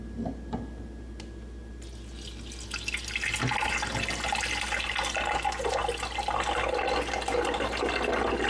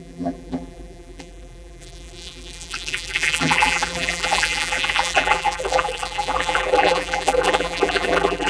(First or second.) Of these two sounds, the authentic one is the first